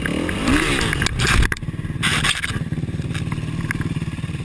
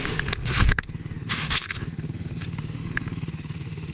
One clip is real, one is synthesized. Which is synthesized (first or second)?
second